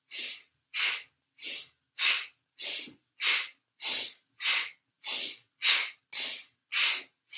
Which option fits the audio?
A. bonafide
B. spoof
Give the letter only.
A